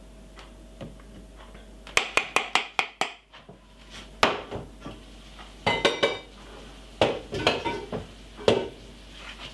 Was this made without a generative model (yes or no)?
yes